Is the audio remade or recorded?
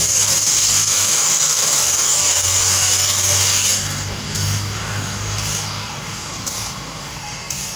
remade